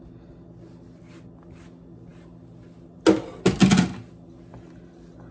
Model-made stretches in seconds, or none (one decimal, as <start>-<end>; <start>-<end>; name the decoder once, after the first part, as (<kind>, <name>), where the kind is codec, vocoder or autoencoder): none